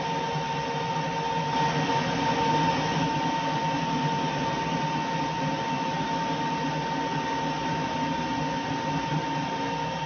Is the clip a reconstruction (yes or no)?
no